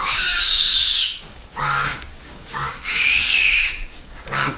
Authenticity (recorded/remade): remade